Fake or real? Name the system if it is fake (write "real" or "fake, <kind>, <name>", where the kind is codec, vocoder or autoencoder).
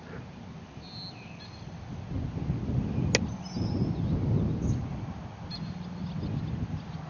real